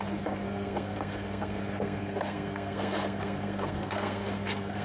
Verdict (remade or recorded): remade